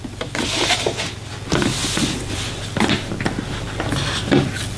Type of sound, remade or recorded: recorded